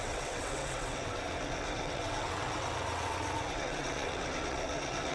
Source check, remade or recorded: remade